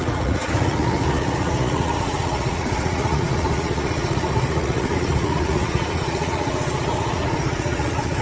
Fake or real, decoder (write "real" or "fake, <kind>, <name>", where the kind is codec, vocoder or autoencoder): fake, vocoder, Vocos